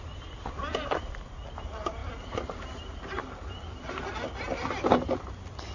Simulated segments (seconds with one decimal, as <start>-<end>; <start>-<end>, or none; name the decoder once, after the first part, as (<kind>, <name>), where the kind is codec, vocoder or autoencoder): none